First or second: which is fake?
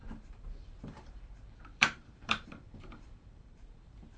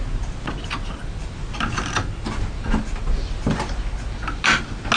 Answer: first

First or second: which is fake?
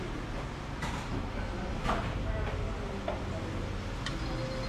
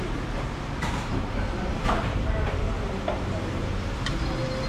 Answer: second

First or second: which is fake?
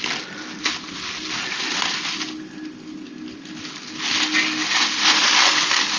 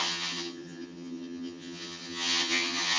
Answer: second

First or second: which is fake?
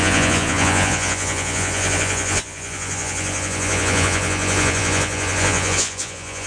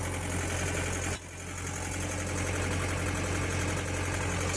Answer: first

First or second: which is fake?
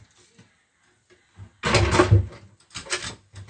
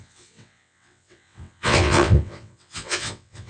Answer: second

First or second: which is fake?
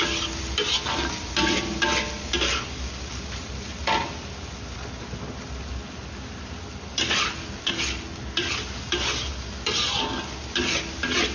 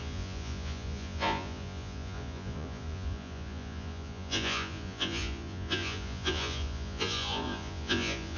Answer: second